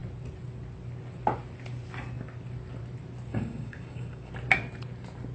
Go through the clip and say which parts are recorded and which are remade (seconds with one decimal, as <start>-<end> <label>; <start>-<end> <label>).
0.0-3.3 recorded; 3.3-4.3 remade; 4.3-5.3 recorded